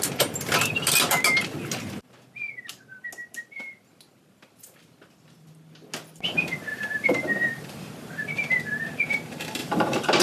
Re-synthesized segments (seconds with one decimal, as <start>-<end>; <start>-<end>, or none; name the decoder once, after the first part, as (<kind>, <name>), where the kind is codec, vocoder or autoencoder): 3.2-3.8 (vocoder, BigVGAN v2); 6.7-7.8; 9.6-10.2